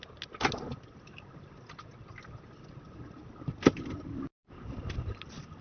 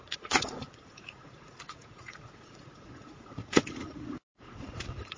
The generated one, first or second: second